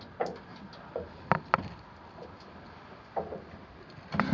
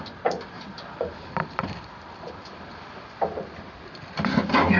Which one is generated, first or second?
second